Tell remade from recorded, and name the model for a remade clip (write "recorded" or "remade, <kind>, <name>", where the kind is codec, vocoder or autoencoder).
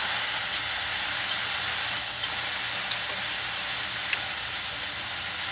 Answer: recorded